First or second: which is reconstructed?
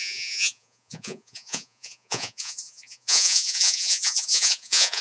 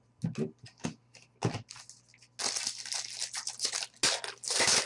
first